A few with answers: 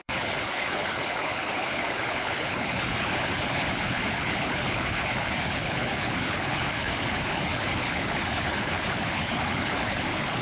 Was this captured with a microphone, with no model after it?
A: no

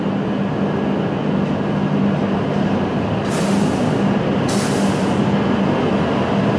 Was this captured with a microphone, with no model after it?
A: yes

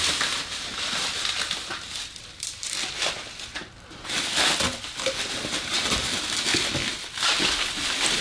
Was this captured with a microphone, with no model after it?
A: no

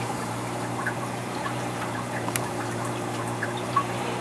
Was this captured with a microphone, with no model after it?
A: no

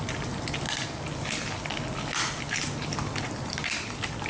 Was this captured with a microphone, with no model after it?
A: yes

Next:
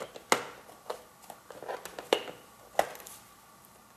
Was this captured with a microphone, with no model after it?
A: yes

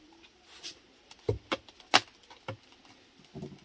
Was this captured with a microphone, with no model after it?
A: yes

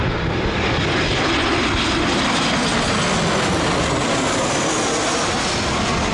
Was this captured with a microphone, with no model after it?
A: yes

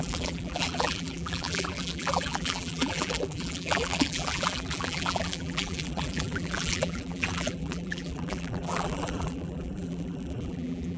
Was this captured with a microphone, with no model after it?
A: no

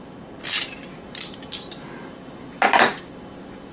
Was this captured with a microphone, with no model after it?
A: yes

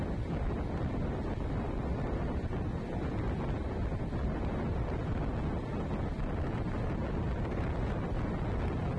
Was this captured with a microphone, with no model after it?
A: yes